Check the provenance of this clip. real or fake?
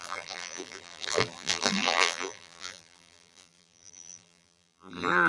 fake